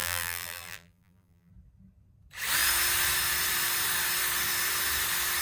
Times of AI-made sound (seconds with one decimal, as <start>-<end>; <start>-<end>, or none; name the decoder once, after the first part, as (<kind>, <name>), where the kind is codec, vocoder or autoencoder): 0.0-1.5 (vocoder, BigVGAN v2)